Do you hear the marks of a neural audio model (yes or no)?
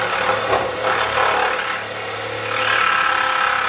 no